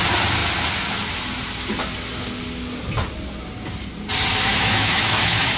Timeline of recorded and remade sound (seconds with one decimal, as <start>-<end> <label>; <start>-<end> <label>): 0.0-4.5 recorded; 4.5-5.6 remade